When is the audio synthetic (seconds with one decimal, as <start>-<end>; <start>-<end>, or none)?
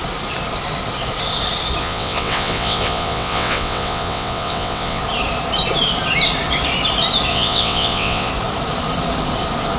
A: 1.8-5.0; 7.3-8.3